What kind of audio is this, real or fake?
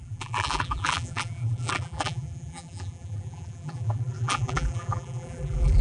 fake